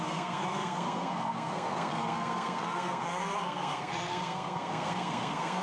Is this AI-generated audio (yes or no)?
yes